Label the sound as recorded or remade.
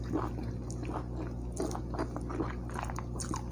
recorded